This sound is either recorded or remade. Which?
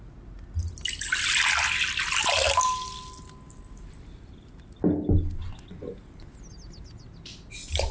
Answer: recorded